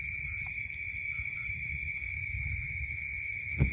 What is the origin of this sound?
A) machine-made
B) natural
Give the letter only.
A